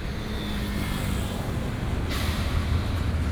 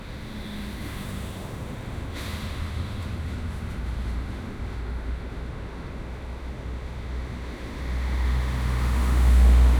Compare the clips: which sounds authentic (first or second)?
first